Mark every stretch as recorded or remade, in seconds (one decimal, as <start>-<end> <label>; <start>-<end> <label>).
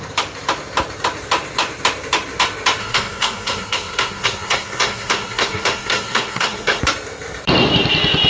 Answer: 0.0-2.8 recorded; 2.8-6.8 remade; 6.8-8.3 recorded